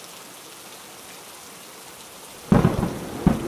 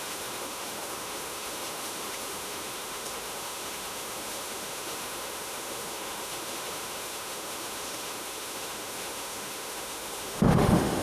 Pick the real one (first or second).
first